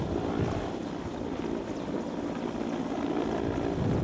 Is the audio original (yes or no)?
yes